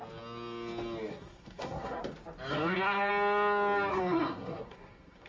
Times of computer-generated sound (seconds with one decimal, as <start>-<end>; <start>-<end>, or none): 1.1-2.0; 2.5-3.1; 3.9-5.3